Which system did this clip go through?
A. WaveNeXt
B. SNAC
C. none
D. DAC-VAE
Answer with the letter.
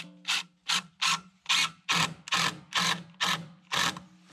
C